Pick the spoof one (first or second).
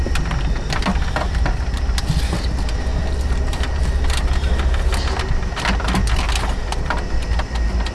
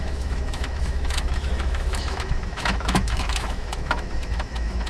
second